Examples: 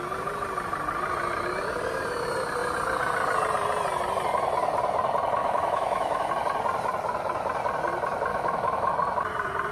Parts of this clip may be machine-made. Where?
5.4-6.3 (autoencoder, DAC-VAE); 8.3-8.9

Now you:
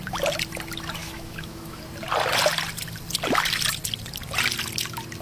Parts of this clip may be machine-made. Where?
1.0-1.8 (autoencoder, DAC-VAE)

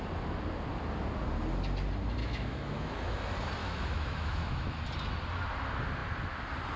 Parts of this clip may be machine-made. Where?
2.2-3.2 (autoencoder, DAC-VAE); 3.6-4.8